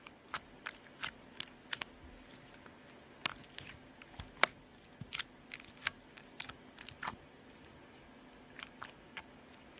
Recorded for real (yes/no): yes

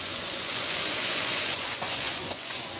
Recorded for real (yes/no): no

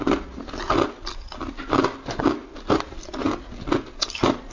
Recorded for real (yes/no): yes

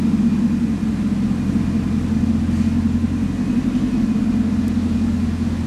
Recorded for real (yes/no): yes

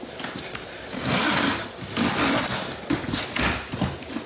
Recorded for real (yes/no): yes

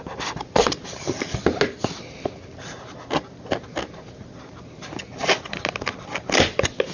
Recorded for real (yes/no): yes